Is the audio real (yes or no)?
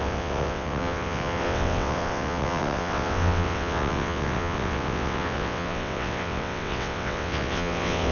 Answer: no